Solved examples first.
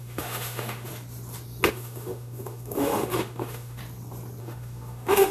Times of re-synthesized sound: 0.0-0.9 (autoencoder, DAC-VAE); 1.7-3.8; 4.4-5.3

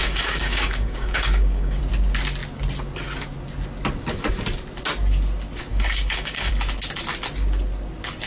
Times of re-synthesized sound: 0.0-1.8 (codec, DAC); 5.7-6.5

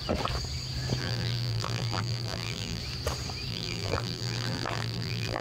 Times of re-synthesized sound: 1.0-2.8 (vocoder, BigVGAN v2); 3.5-5.4

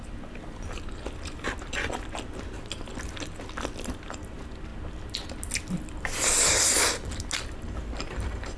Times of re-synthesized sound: none

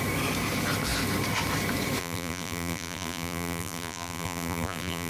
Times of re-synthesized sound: 2.0-5.1 (vocoder, BigVGAN v2)

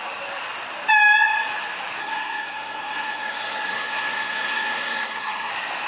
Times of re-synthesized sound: 2.0-5.5 (codec, SNAC)

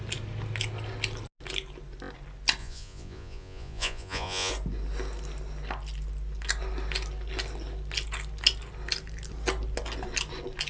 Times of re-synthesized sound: 2.6-4.5 (vocoder, Vocos)

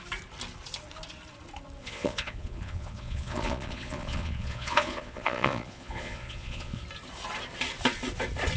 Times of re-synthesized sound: 1.8-6.8 (vocoder, Vocos)